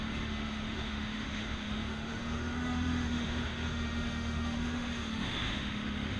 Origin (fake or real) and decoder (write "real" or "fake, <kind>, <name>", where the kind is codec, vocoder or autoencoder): fake, autoencoder, DAC-VAE